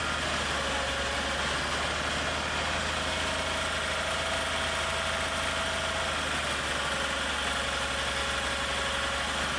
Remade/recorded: recorded